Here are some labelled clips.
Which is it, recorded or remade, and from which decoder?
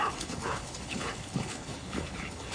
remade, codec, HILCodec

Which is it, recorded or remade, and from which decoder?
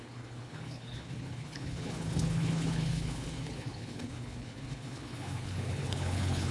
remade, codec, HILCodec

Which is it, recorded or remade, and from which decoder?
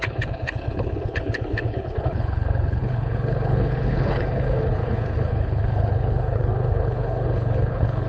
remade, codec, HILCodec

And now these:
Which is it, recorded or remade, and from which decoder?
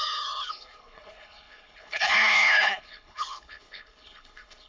remade, codec, HILCodec